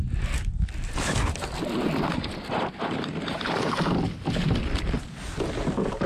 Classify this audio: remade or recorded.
recorded